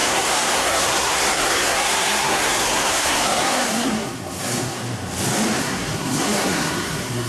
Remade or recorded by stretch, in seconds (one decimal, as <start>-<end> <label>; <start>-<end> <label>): 0.0-4.8 remade; 4.8-5.6 recorded; 5.6-7.3 remade